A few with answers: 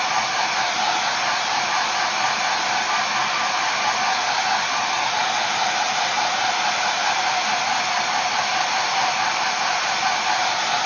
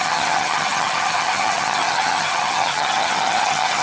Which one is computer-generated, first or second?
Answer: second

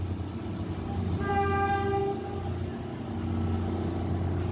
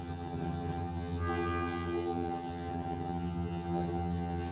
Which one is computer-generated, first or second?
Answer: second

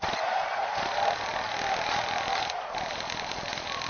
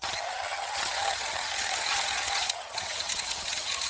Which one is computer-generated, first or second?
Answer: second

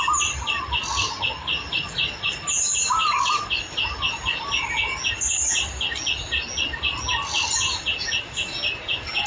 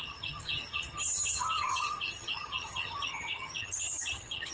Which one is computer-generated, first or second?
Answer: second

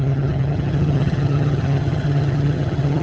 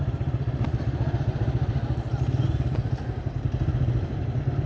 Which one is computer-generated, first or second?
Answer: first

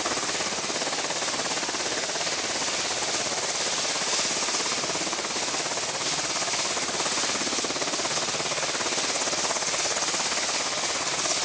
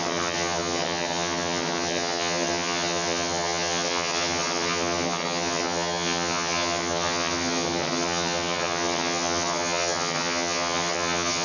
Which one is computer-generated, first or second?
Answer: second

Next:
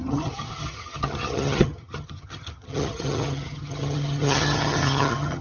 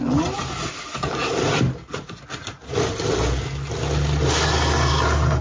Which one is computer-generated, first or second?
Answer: first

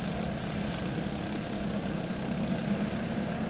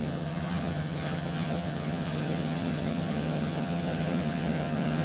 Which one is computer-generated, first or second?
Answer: second